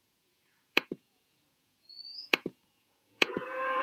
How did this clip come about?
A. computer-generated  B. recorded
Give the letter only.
A